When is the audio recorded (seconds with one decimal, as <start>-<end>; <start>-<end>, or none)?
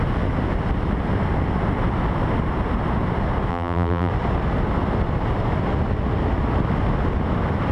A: 0.0-3.5; 4.1-7.7